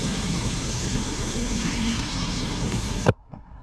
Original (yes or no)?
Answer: no